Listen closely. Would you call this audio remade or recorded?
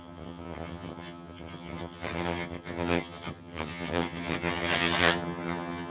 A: remade